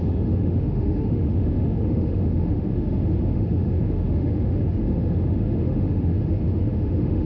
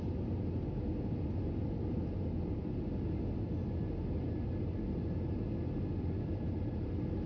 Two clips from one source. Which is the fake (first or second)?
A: first